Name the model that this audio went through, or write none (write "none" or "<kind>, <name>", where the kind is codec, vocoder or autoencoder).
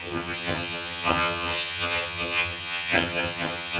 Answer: vocoder, HiFi-GAN